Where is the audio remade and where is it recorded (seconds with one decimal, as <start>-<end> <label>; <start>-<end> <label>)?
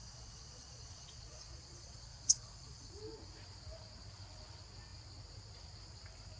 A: 0.0-3.0 remade; 3.0-6.4 recorded